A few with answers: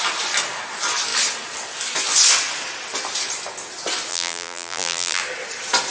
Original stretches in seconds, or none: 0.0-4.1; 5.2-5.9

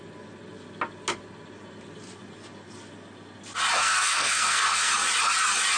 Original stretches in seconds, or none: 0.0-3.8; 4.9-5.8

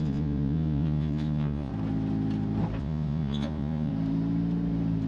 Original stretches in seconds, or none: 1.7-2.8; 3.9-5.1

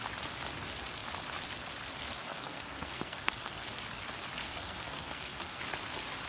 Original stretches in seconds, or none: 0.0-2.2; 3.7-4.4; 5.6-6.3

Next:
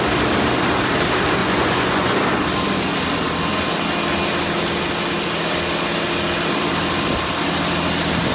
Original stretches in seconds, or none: 0.0-1.4; 2.2-8.3

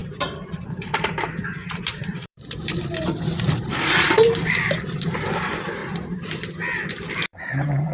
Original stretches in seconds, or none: none